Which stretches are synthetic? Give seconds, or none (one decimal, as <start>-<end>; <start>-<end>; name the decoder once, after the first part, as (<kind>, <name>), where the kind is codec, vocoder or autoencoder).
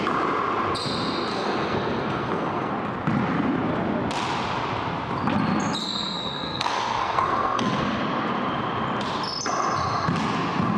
1.3-2.7 (codec, SNAC); 5.8-8.0